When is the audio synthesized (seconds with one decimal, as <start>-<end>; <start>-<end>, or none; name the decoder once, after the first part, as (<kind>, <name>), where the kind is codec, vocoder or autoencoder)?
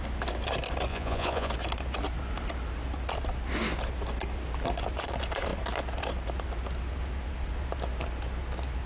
0.9-1.5 (vocoder, Vocos)